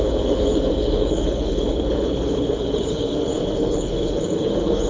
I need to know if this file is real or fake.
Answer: fake